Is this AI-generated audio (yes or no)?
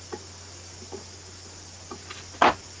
no